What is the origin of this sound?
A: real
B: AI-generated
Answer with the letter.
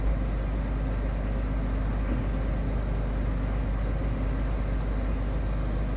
A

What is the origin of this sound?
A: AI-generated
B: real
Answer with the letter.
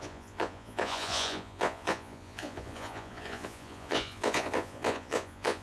A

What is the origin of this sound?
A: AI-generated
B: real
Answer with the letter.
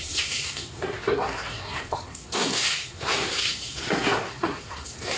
A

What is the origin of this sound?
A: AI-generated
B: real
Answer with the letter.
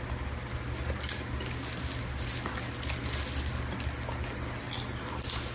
B